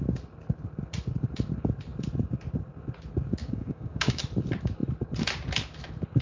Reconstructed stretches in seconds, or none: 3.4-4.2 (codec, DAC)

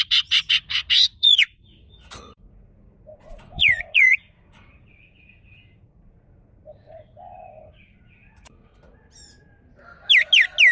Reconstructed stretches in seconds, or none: 0.0-8.7 (vocoder, Vocos)